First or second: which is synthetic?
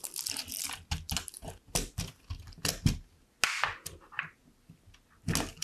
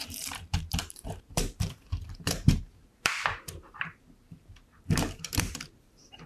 second